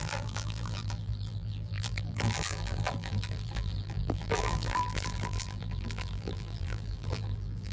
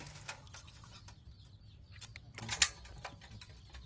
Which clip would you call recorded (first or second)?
second